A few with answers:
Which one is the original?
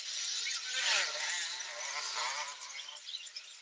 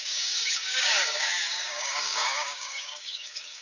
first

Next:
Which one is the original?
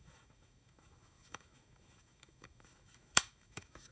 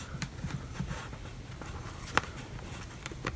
second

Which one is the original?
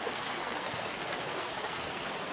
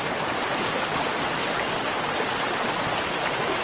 second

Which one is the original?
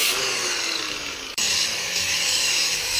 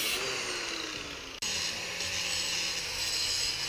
second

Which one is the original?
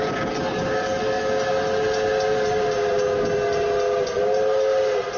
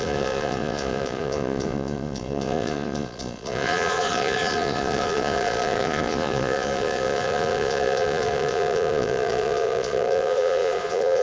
first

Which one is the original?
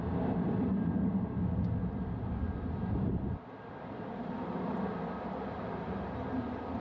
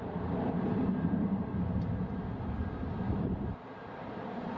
first